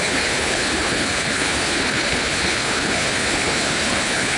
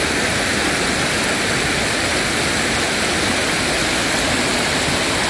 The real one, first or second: second